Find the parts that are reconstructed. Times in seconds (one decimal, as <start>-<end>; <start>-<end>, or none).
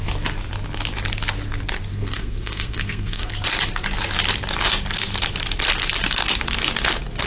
1.9-3.3